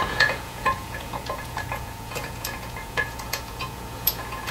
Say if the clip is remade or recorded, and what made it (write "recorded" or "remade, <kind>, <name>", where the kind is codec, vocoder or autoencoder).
remade, vocoder, Vocos